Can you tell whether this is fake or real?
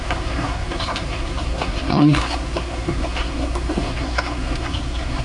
fake